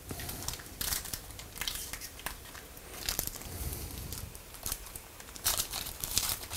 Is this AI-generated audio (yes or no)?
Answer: yes